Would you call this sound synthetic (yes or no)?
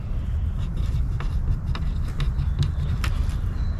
no